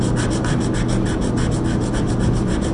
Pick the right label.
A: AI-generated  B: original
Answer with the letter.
B